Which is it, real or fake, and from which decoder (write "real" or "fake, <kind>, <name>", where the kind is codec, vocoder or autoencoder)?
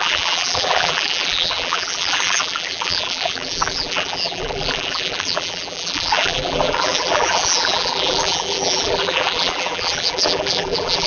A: fake, vocoder, BigVGAN v2